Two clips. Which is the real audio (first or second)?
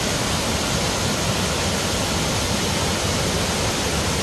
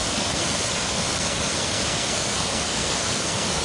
first